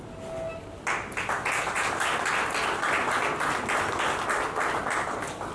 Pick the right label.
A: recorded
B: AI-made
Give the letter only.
A